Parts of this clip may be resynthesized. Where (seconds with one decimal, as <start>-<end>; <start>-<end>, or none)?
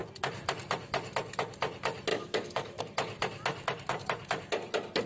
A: 2.1-2.8